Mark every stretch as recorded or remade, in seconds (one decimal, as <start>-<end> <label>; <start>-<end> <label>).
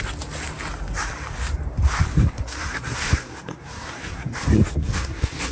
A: 0.0-2.1 recorded; 2.1-5.5 remade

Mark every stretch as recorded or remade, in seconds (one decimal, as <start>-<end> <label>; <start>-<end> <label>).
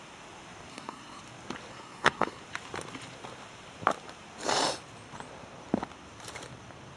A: 0.0-0.7 recorded; 0.7-1.2 remade; 1.2-1.7 recorded; 1.7-2.4 remade; 2.4-7.0 recorded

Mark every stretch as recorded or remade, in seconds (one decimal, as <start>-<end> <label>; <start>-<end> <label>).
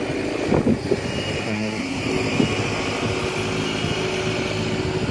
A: 0.0-1.4 recorded; 1.4-2.0 remade; 2.0-5.1 recorded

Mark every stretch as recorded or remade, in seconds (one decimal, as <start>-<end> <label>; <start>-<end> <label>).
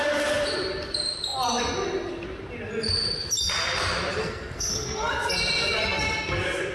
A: 0.0-4.2 recorded; 4.2-5.1 remade; 5.1-6.7 recorded